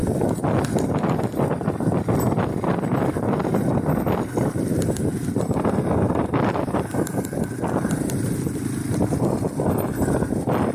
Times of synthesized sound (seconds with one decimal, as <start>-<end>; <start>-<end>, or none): none